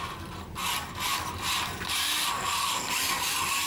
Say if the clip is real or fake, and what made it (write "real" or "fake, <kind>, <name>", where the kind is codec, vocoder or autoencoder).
real